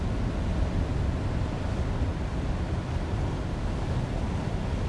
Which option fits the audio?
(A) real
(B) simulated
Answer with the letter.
A